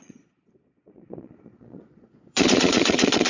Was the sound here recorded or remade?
remade